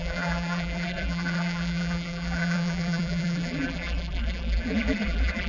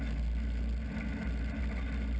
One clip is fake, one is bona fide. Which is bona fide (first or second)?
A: second